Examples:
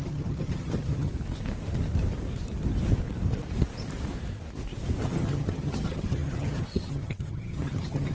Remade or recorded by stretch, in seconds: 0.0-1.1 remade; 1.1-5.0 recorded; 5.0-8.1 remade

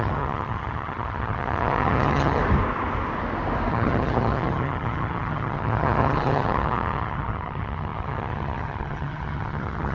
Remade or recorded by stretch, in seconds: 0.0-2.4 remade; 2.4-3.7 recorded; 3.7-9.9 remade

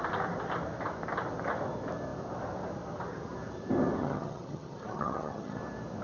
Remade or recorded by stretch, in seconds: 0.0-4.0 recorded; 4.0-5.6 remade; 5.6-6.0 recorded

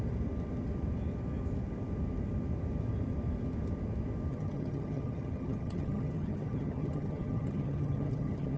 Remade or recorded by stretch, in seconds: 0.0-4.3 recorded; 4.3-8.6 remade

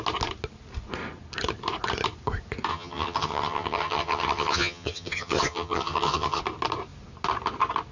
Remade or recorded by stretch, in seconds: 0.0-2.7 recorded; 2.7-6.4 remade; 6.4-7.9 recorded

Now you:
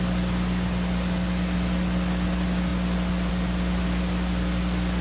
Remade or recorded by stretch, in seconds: 0.0-5.0 recorded

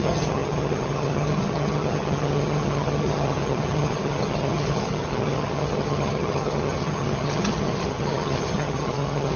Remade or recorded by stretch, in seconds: 0.0-9.4 remade